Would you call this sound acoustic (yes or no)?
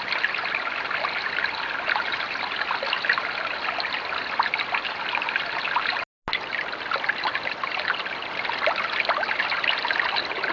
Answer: yes